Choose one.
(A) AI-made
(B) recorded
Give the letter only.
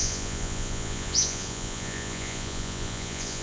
A